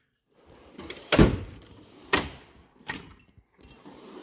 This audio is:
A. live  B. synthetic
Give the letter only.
B